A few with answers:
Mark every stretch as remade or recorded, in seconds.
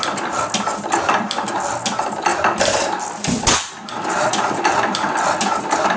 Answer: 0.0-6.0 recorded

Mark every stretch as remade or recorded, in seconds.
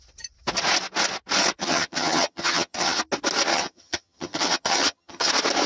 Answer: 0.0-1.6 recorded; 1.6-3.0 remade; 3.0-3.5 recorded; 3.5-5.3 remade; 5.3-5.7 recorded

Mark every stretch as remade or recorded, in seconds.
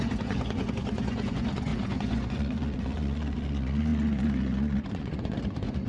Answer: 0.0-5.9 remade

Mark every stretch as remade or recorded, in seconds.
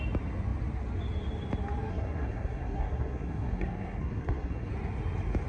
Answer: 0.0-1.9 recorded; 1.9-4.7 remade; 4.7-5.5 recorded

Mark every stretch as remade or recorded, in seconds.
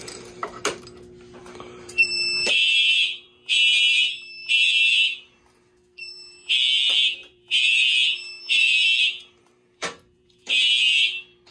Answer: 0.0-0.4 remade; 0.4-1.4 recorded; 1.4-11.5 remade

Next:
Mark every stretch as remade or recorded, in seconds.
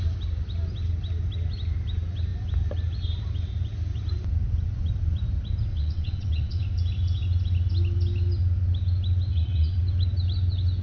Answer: 0.0-5.7 recorded; 5.7-6.6 remade; 6.6-9.3 recorded; 9.3-9.8 remade; 9.8-10.8 recorded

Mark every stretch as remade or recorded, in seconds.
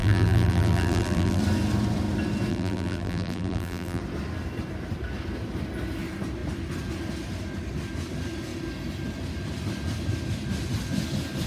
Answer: 0.0-1.4 remade; 1.4-2.5 recorded; 2.5-4.0 remade; 4.0-11.5 recorded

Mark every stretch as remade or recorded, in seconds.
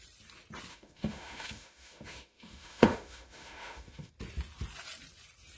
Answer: 0.0-0.7 recorded; 0.7-4.1 remade; 4.1-5.6 recorded